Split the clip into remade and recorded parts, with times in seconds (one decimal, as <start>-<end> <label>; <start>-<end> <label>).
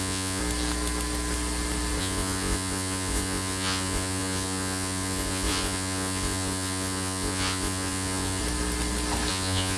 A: 0.0-0.4 remade; 0.4-2.0 recorded; 2.0-8.4 remade; 8.4-9.3 recorded; 9.3-9.8 remade